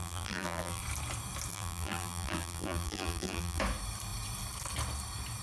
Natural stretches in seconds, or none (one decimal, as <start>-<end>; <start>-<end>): 0.8-1.5; 3.6-5.4